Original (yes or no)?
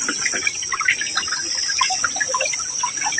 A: yes